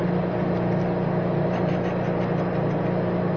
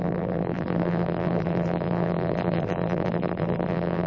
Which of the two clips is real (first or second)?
first